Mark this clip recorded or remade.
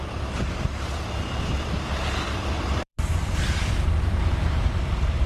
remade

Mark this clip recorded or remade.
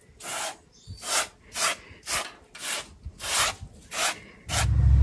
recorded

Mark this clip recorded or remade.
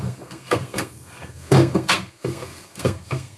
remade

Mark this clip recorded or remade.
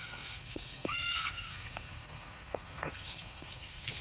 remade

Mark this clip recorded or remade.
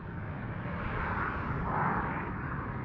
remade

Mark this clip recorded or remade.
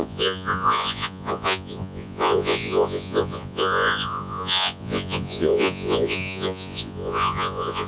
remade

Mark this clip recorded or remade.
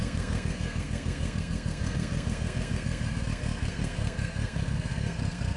remade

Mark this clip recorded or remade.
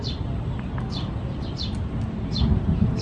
recorded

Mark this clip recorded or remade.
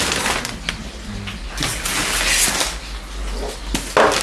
recorded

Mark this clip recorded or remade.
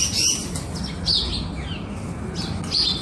recorded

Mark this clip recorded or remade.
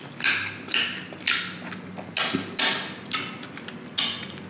recorded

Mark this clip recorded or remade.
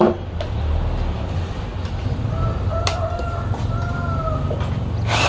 recorded